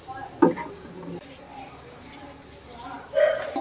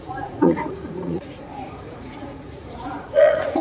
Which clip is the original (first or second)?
first